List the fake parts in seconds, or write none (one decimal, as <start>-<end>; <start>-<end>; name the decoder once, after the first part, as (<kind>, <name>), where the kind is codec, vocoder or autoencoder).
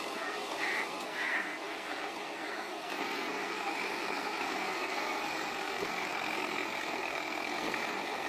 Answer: 0.0-8.3 (codec, SNAC)